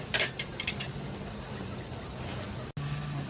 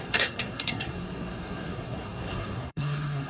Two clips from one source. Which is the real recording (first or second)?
first